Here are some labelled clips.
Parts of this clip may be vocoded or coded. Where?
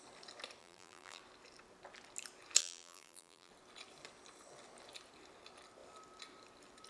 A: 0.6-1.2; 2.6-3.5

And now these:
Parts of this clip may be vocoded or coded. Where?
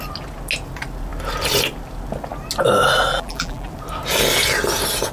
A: 3.1-3.7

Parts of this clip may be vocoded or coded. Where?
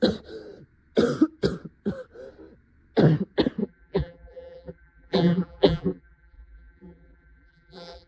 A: 3.6-8.1